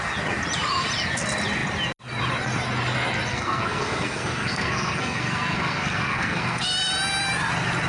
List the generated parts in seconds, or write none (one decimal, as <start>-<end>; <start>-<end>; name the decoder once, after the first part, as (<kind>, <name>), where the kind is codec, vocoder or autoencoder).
3.3-6.6 (codec, SNAC)